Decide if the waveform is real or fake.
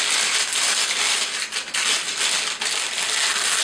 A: real